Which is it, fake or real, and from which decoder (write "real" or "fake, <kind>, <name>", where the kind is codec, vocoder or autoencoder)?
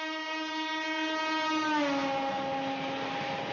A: real